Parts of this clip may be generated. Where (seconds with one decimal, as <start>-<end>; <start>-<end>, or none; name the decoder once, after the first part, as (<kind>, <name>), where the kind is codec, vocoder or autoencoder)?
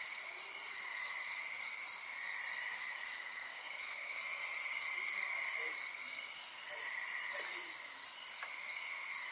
0.7-1.4 (autoencoder, DAC-VAE); 2.7-4.2